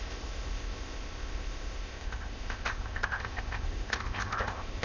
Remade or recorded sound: remade